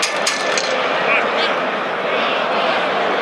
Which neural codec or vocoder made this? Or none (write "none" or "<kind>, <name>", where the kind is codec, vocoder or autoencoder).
none